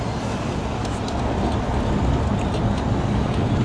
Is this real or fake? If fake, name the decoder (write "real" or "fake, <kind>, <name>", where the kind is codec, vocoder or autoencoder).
real